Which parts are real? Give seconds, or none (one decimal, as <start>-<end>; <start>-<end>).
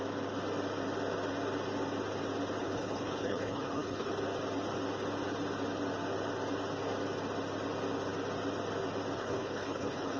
0.0-2.6; 4.1-9.2